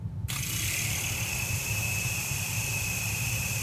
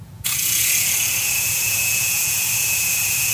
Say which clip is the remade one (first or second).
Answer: second